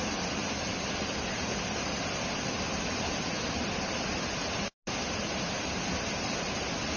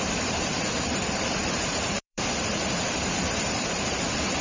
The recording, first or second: first